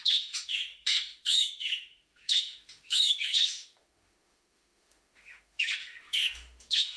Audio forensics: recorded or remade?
remade